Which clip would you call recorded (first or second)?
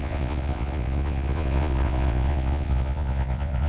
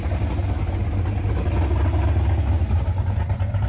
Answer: second